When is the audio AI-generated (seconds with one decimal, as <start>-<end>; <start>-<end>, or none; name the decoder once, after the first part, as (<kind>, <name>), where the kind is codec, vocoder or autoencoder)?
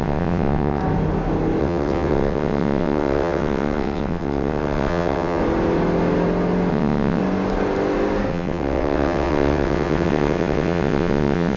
0.0-0.8 (vocoder, WaveNeXt); 1.6-5.4; 6.7-7.2; 8.3-11.6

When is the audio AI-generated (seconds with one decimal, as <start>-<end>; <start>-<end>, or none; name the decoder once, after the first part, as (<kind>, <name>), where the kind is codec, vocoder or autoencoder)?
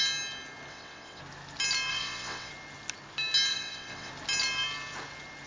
0.7-1.2 (vocoder, WaveNeXt); 1.9-2.5; 3.5-4.1